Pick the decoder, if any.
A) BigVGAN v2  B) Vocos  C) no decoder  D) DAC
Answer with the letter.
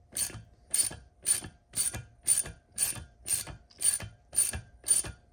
A